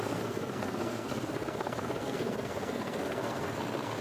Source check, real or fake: fake